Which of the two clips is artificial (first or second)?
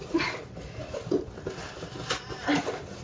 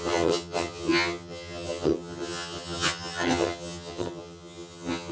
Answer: second